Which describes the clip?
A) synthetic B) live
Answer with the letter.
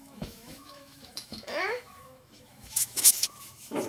A